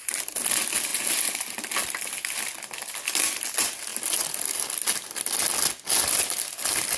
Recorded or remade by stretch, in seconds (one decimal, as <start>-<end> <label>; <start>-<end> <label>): 0.0-7.0 recorded